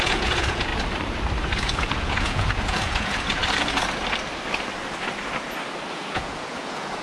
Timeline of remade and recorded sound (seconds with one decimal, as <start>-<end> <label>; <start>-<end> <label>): 0.0-0.7 remade; 0.7-1.4 recorded; 1.4-3.4 remade; 3.4-5.9 recorded; 5.9-7.0 remade